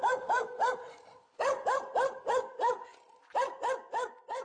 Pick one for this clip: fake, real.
real